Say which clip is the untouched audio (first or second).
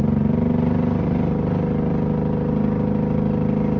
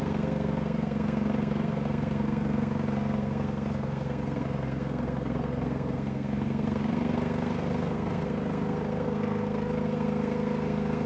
first